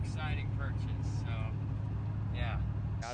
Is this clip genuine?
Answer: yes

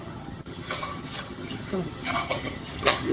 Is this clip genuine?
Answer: no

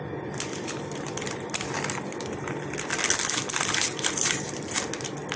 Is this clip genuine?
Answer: yes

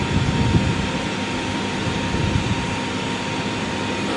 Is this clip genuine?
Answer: no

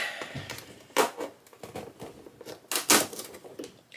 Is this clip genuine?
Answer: yes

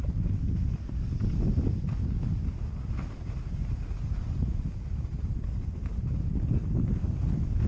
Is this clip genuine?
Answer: yes